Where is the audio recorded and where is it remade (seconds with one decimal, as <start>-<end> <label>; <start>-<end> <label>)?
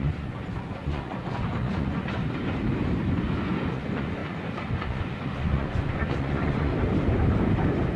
0.0-2.2 remade; 2.2-3.7 recorded; 3.7-6.7 remade; 6.7-8.0 recorded